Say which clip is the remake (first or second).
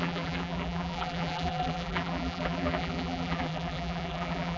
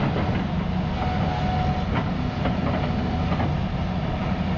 first